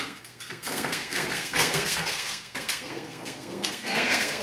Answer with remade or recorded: remade